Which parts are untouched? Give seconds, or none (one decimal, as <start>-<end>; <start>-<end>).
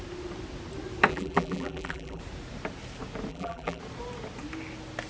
0.0-1.1; 2.2-3.3; 3.8-5.1